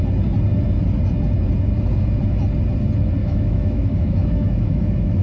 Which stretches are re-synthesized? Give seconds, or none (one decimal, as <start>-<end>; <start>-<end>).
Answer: 3.2-5.2